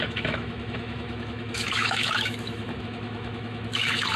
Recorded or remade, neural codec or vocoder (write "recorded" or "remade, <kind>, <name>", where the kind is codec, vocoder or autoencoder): remade, autoencoder, DAC-VAE